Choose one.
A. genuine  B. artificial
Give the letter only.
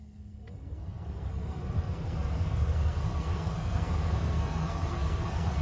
B